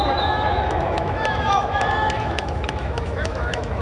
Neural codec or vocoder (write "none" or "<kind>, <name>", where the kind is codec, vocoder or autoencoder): autoencoder, DAC-VAE